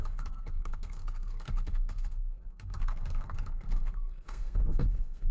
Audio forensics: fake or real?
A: fake